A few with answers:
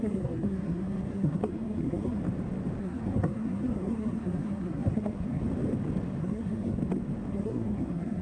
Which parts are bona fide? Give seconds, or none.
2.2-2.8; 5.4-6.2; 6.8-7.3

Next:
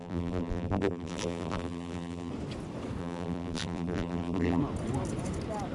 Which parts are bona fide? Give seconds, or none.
2.3-3.0; 4.6-5.7

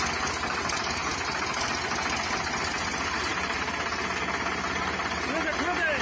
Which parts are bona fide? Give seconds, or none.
0.0-6.0